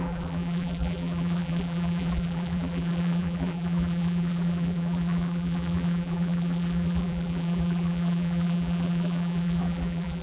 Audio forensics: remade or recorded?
remade